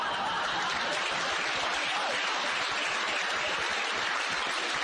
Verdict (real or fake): real